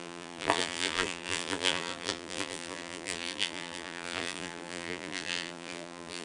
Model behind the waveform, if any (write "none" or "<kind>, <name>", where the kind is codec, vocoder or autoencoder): vocoder, BigVGAN v2